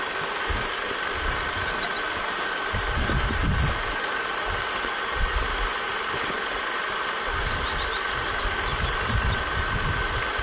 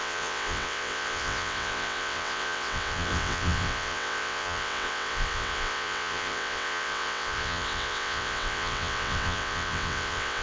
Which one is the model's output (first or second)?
second